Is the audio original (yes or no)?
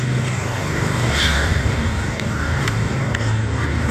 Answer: no